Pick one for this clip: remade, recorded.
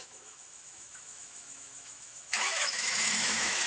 remade